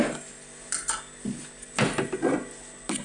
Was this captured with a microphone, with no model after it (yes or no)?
yes